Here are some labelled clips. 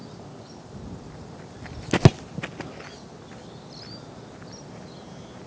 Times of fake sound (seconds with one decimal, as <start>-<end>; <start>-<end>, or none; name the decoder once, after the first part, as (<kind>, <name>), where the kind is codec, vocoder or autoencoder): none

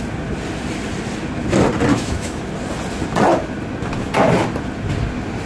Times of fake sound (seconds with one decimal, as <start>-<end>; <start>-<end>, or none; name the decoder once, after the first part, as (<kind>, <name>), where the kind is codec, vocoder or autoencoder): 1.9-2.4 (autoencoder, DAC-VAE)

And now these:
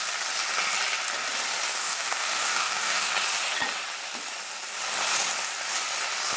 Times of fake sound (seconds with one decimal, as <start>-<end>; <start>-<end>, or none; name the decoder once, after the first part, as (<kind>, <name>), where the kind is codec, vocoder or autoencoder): 1.8-3.1 (codec, DAC)

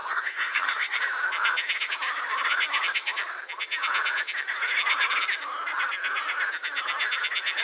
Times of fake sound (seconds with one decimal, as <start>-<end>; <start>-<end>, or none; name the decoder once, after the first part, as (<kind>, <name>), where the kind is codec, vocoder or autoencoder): 0.0-1.0 (codec, SNAC)

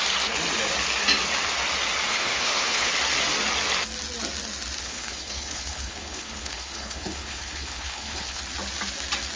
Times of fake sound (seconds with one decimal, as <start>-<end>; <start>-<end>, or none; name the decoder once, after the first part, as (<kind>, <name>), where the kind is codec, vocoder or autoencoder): 2.1-2.9 (codec, HILCodec); 4.8-8.4

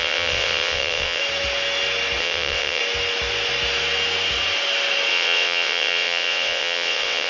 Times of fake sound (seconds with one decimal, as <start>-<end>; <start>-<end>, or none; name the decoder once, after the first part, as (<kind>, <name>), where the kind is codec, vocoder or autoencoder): 0.0-1.2 (vocoder, WaveNeXt); 2.2-2.8; 5.1-7.3

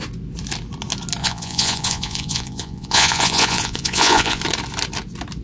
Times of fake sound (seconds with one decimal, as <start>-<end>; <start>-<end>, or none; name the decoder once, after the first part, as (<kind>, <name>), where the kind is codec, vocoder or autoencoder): 1.2-4.4 (vocoder, Vocos)

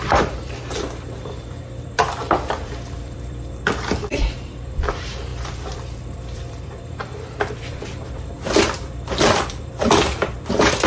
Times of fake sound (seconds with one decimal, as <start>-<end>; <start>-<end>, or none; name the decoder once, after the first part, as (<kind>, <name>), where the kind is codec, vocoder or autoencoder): 0.0-10.9 (vocoder, BigVGAN v2)